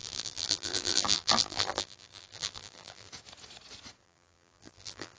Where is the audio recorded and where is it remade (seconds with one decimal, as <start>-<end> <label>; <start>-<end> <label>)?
0.0-3.1 remade; 3.1-4.0 recorded; 4.0-5.2 remade